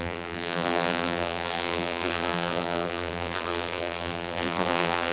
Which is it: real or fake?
fake